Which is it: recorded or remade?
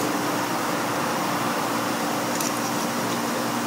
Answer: recorded